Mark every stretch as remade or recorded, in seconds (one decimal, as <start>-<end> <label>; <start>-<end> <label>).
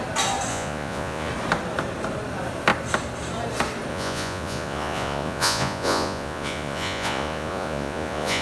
0.0-0.5 recorded; 0.5-1.3 remade; 1.3-3.9 recorded; 3.9-8.4 remade